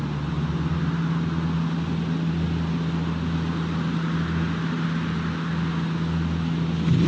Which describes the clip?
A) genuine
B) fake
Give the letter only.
A